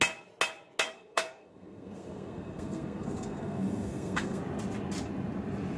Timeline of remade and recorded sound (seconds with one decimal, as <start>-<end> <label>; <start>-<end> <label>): 0.0-0.9 recorded; 0.9-4.4 remade; 4.4-5.8 recorded